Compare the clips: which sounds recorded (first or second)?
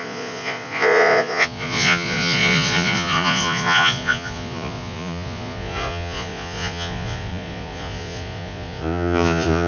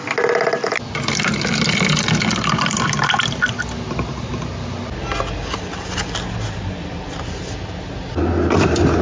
second